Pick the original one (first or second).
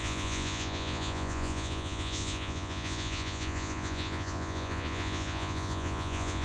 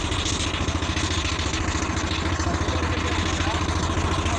second